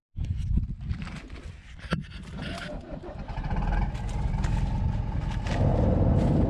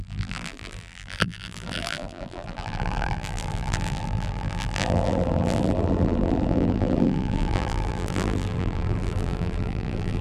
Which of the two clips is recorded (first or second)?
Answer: first